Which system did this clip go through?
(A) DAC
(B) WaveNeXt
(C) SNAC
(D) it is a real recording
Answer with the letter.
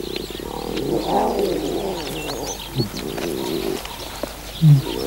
D